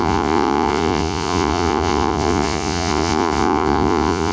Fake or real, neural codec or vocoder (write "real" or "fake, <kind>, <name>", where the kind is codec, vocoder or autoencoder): fake, vocoder, Vocos